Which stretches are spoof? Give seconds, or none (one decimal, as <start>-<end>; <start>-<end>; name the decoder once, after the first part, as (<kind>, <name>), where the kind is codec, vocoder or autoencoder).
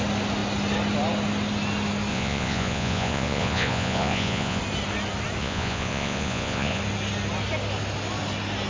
2.1-4.6 (vocoder, Vocos); 5.4-6.8